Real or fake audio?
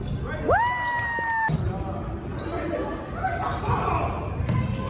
real